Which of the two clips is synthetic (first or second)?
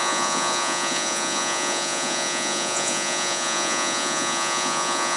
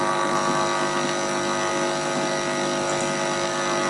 first